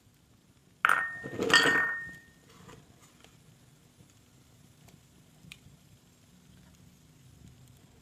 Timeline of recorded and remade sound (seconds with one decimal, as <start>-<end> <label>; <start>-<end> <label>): 0.0-0.6 remade; 0.6-2.0 recorded; 2.0-8.0 remade